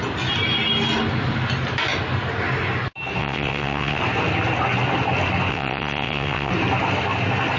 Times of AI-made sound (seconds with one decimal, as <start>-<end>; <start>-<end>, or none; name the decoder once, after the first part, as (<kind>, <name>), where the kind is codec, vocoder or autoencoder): 3.2-4.0 (vocoder, WaveNeXt); 5.5-6.5